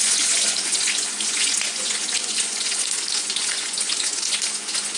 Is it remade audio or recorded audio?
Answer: remade